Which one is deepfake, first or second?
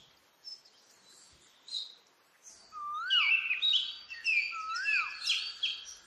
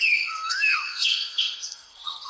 second